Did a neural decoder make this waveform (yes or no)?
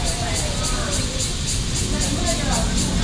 no